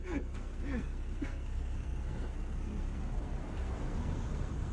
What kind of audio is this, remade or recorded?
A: remade